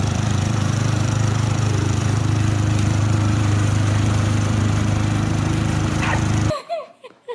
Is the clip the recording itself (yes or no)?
no